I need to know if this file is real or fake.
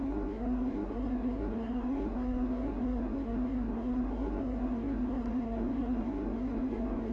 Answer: fake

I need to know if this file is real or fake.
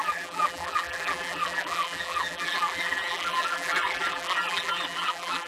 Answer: fake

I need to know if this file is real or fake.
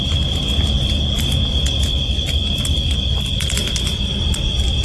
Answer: real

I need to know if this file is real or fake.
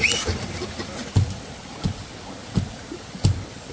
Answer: real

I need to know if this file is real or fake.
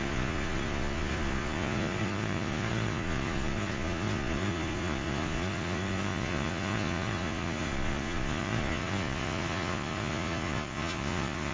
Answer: fake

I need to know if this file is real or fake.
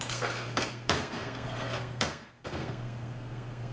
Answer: fake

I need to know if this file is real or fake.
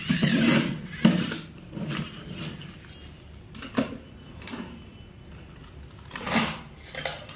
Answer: real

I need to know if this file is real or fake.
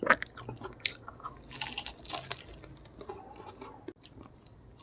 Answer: real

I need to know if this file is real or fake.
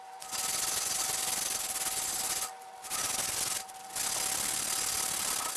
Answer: real